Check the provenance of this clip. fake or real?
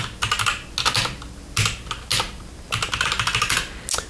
real